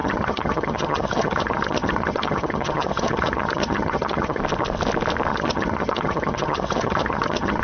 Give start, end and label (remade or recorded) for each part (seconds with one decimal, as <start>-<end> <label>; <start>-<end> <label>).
0.0-4.4 remade; 4.4-5.3 recorded; 5.3-7.6 remade